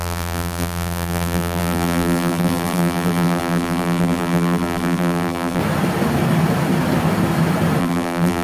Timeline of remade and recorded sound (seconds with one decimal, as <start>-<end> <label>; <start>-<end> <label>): 0.0-5.6 remade; 5.6-7.8 recorded; 7.8-8.4 remade